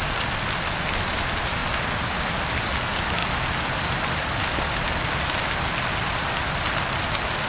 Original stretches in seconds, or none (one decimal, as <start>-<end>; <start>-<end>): 0.0-7.5